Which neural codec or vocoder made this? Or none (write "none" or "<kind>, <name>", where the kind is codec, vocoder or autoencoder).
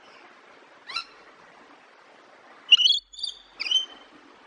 none